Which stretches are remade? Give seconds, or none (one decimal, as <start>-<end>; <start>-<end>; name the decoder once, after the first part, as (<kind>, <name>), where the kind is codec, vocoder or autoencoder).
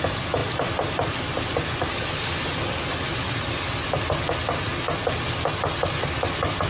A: none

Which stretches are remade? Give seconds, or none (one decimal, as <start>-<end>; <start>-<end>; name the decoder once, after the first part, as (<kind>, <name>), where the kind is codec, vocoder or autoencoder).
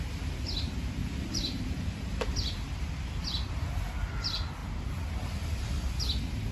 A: 1.0-3.7 (vocoder, BigVGAN v2); 4.6-6.0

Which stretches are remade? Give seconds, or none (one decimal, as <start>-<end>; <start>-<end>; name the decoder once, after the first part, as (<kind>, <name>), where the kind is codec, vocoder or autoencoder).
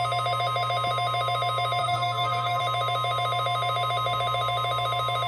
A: 1.8-2.6 (codec, SNAC)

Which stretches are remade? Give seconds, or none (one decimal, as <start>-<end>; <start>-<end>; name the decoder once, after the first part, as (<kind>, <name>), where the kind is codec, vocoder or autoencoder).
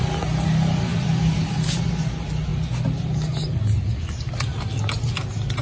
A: none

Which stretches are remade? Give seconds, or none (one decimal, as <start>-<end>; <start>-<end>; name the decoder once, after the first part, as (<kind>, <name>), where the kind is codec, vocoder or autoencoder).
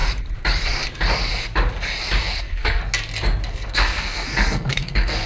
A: 2.2-2.8 (codec, SNAC); 3.5-5.3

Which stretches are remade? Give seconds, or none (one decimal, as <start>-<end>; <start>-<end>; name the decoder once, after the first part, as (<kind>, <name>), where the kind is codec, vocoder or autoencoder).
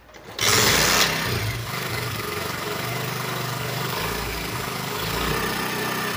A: 1.6-5.3 (codec, DAC)